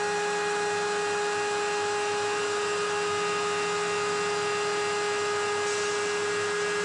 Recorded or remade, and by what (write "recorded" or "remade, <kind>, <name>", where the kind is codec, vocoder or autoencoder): recorded